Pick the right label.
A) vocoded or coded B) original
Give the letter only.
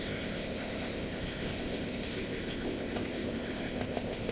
A